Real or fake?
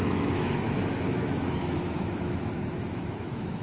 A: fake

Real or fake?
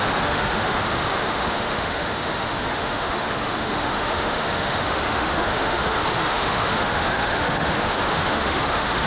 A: fake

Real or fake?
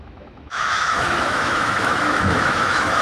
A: fake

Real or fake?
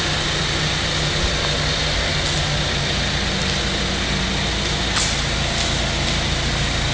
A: real